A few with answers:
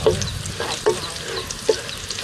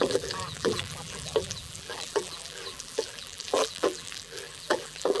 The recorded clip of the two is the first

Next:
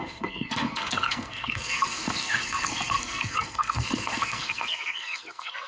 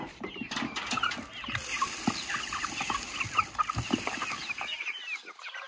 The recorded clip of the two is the second